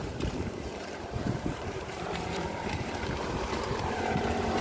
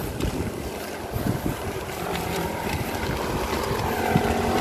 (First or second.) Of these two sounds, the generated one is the first